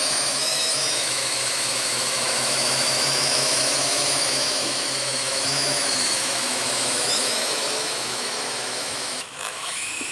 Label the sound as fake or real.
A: fake